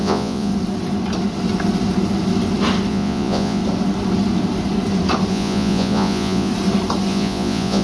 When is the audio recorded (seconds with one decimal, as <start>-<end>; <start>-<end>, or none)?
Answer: 0.5-2.9; 3.6-5.3; 6.5-7.1